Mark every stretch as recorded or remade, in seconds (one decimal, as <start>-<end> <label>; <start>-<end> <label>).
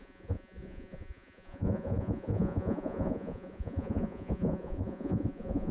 0.0-5.7 remade